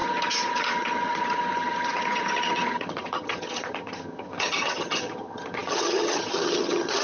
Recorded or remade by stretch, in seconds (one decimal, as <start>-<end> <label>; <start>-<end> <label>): 0.0-7.0 remade